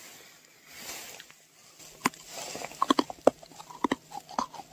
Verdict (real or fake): real